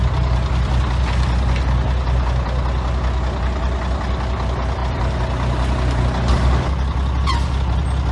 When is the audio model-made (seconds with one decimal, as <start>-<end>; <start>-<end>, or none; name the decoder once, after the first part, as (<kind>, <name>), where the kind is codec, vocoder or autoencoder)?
0.0-0.7 (vocoder, BigVGAN v2); 4.8-6.0